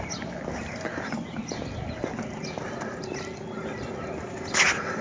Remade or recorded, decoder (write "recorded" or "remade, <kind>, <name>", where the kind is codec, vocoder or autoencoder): recorded